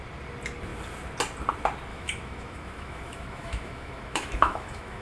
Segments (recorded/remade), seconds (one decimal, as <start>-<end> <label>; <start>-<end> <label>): 0.0-1.9 recorded; 1.9-5.0 remade

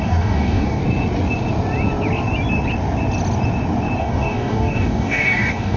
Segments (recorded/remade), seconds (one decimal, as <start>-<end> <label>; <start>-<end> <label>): 0.0-0.8 remade; 0.8-4.0 recorded; 4.0-5.8 remade